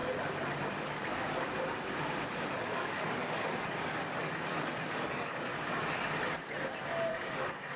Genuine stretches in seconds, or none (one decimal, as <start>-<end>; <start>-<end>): 0.0-0.7; 1.2-2.3; 5.5-7.1